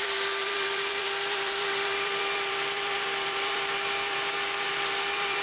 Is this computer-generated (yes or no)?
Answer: yes